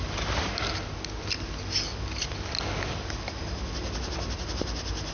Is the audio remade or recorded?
recorded